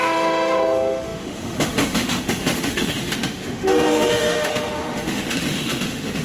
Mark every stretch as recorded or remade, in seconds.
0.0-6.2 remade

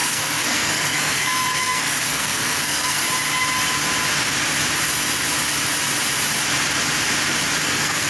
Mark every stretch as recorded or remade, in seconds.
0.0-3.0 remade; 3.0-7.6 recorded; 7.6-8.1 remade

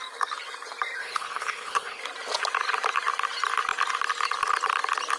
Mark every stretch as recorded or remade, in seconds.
0.0-1.0 recorded; 1.0-2.0 remade; 2.0-5.2 recorded